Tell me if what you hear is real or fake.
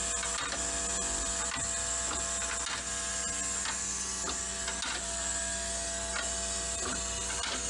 real